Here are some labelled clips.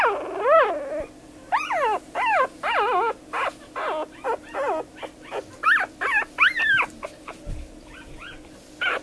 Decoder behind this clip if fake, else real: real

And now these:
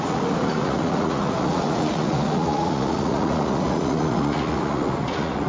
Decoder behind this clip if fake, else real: fake, vocoder, Vocos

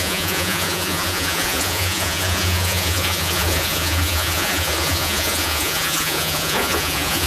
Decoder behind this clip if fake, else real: fake, vocoder, Vocos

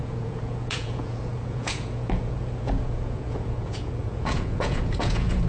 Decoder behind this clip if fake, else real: fake, vocoder, Vocos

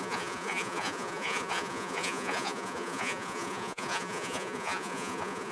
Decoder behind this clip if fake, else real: fake, vocoder, Vocos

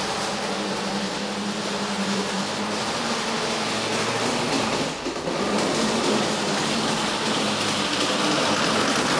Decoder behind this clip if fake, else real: real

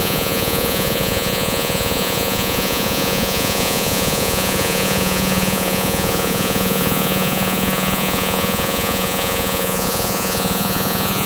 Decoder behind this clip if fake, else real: fake, vocoder, Vocos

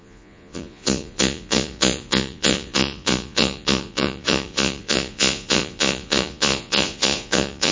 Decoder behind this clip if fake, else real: fake, vocoder, Vocos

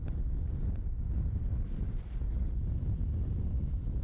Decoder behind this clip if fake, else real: real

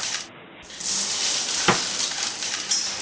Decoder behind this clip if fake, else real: real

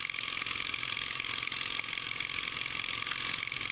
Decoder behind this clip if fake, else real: real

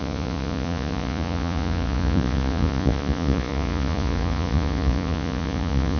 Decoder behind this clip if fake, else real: fake, vocoder, Vocos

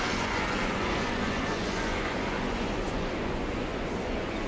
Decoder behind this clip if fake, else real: fake, vocoder, Vocos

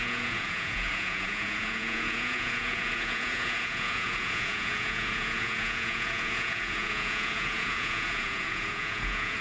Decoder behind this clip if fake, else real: fake, vocoder, Vocos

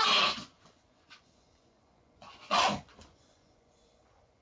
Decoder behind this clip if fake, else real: fake, vocoder, Vocos